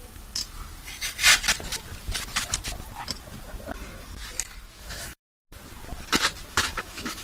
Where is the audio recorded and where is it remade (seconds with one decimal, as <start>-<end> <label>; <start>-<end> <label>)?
0.0-0.4 remade; 0.4-4.7 recorded; 4.7-5.4 remade; 5.4-6.5 recorded; 6.5-7.2 remade